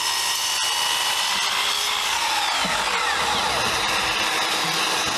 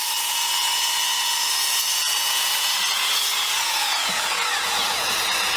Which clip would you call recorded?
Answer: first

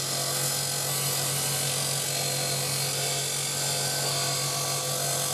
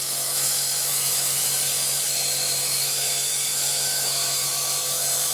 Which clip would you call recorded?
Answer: first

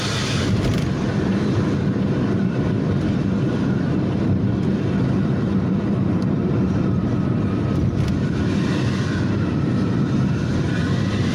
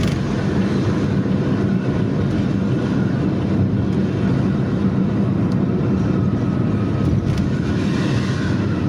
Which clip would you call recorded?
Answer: second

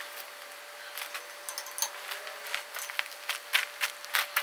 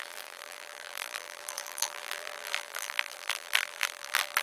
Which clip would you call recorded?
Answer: first